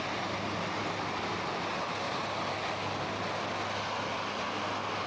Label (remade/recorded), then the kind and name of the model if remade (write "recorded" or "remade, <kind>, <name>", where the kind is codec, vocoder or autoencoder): recorded